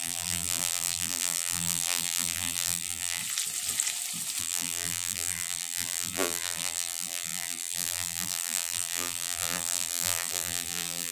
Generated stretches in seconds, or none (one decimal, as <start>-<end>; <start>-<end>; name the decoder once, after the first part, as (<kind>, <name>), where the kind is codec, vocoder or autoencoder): 0.0-3.2 (vocoder, BigVGAN v2); 4.4-11.1